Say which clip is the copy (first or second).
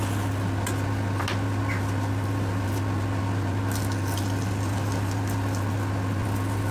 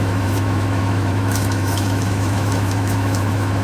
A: second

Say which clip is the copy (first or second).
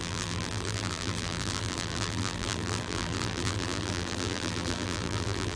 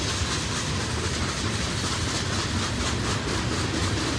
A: first